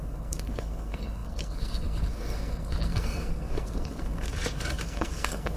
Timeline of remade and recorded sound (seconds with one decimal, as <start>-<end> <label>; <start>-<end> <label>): 0.0-5.6 remade